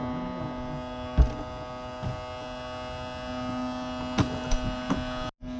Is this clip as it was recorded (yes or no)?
yes